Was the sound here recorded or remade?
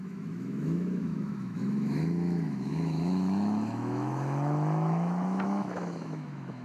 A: remade